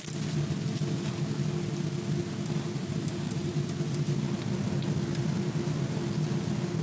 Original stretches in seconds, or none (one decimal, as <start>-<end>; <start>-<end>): 0.0-2.8; 3.5-6.8